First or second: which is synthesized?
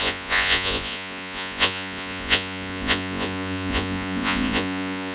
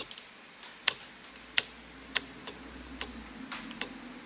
first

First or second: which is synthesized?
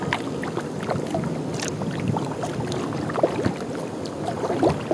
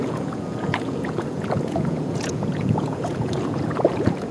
second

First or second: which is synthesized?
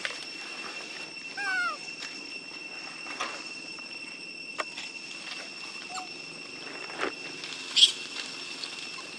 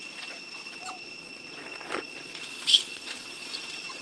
second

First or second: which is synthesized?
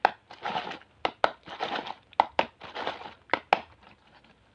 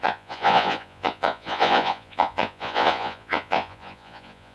second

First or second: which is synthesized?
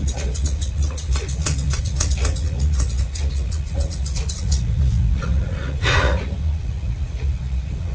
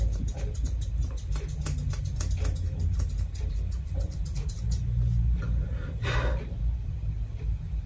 first